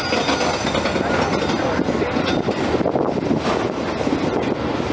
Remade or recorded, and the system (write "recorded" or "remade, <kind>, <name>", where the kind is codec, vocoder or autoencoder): recorded